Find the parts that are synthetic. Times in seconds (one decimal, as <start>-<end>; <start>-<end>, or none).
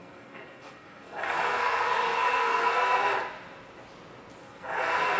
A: 0.0-3.1; 4.4-5.2